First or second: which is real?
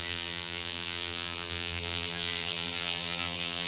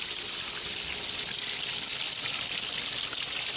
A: second